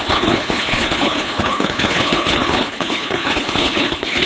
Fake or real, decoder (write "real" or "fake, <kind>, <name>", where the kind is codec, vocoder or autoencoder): fake, codec, HILCodec